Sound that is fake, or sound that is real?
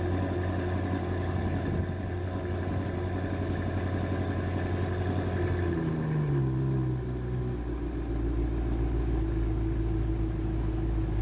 real